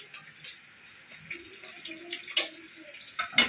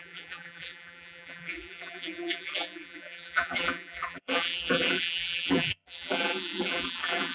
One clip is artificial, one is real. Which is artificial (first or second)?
second